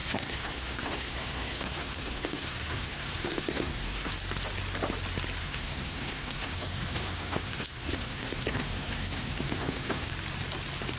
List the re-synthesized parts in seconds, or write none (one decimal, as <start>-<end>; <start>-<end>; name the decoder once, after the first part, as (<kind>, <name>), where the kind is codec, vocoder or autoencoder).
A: 0.0-4.1 (codec, SNAC); 5.4-10.1